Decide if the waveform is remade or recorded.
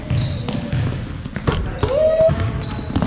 recorded